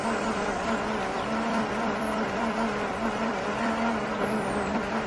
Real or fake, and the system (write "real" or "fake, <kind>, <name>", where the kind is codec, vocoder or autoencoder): fake, vocoder, BigVGAN v2